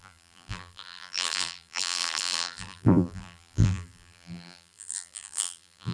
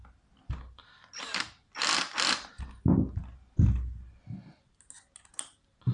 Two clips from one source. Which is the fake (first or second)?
first